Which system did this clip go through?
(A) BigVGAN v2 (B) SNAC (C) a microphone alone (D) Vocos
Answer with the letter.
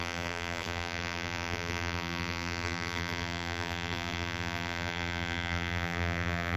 A